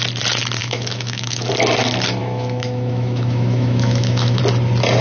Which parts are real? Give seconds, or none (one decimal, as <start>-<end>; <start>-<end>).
0.0-0.6; 1.5-2.2; 4.4-5.0